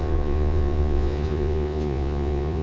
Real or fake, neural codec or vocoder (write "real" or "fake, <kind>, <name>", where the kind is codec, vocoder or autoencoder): fake, vocoder, Vocos